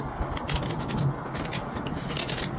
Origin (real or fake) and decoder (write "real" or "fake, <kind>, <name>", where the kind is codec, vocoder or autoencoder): real